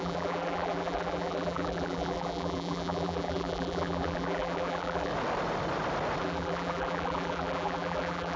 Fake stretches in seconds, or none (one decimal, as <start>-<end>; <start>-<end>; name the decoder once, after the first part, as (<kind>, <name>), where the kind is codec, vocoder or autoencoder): 0.0-5.1 (vocoder, BigVGAN v2); 6.2-8.4